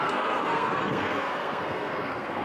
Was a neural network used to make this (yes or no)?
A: yes